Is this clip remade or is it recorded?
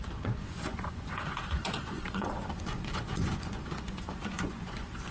remade